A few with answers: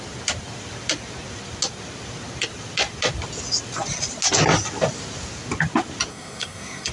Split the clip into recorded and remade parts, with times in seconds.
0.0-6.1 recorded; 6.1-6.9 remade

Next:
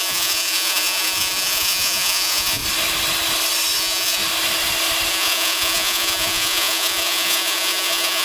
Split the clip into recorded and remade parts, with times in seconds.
0.0-2.6 remade; 2.6-3.8 recorded; 3.8-4.2 remade; 4.2-5.1 recorded; 5.1-8.2 remade

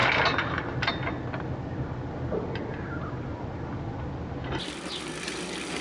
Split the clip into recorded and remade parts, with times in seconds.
0.0-5.8 recorded

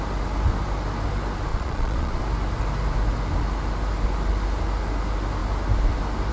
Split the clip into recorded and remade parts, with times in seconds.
0.0-1.5 recorded; 1.5-2.2 remade; 2.2-6.3 recorded

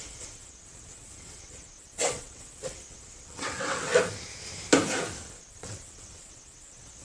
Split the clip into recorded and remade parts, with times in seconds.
0.0-3.9 remade; 3.9-5.4 recorded; 5.4-7.0 remade